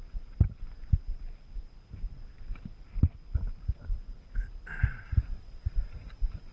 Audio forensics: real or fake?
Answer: fake